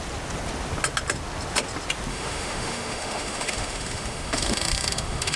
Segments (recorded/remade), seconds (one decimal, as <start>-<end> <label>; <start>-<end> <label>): 0.0-2.1 recorded; 2.1-5.4 remade